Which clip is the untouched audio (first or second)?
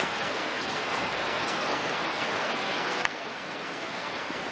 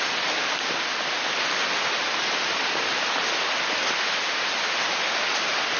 second